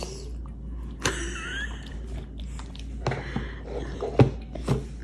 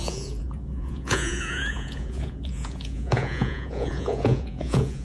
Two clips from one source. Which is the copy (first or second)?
second